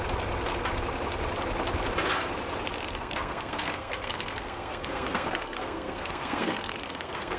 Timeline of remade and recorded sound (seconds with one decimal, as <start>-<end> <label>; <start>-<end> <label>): 0.0-3.0 recorded; 3.0-7.4 remade